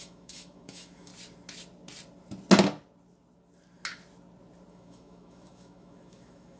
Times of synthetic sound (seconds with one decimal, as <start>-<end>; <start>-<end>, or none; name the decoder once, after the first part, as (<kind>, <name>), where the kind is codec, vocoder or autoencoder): 0.0-1.1 (autoencoder, DAC-VAE); 4.7-6.6